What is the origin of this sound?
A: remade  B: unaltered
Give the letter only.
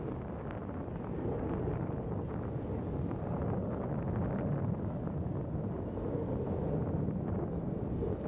B